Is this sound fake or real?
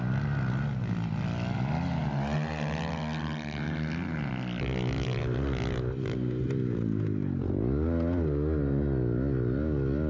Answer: real